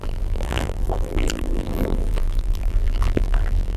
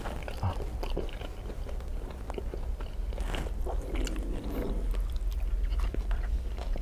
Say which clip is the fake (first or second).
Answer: first